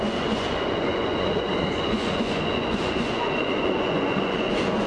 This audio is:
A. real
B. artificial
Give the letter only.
B